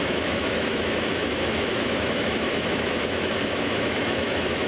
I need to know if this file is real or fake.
fake